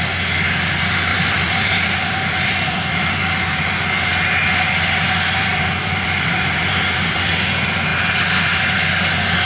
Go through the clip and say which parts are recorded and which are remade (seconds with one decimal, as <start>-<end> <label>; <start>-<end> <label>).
0.0-1.1 recorded; 1.1-3.7 remade; 3.7-5.5 recorded; 5.5-7.3 remade; 7.3-9.4 recorded